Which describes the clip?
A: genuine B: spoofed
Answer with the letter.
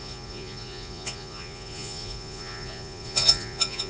B